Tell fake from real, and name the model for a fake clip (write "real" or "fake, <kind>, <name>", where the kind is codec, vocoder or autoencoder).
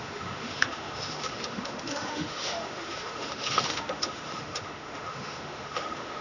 fake, autoencoder, DAC-VAE